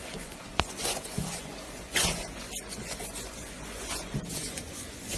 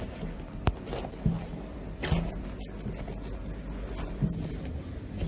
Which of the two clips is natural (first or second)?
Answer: second